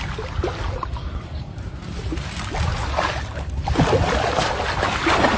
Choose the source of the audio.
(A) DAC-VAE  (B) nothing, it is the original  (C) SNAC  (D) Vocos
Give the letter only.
B